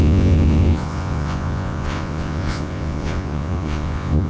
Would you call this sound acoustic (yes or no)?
no